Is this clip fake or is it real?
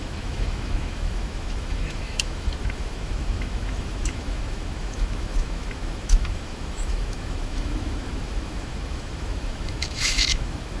fake